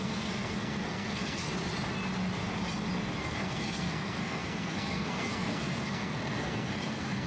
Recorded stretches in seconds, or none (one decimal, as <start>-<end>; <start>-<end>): 1.5-3.2